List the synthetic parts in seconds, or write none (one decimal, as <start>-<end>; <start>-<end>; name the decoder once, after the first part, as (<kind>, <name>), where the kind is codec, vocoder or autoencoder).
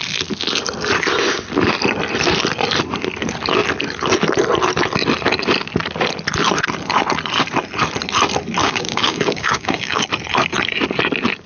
8.6-10.1 (codec, DAC)